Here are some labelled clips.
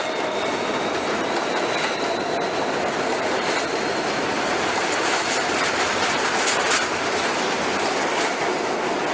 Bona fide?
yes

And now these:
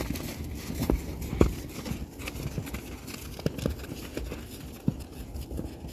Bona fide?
yes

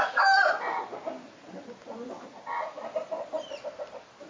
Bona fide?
yes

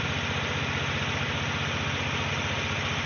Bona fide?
yes